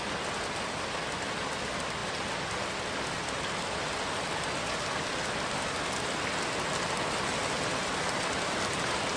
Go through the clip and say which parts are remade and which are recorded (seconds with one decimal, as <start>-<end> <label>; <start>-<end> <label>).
0.0-9.2 recorded